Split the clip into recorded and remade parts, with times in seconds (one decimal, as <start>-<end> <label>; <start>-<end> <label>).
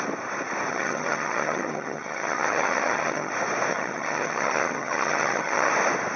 0.0-0.7 recorded; 0.7-3.3 remade; 3.3-3.7 recorded; 3.7-5.7 remade; 5.7-6.2 recorded